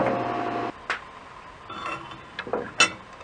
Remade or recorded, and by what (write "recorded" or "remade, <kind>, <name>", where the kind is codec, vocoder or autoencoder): recorded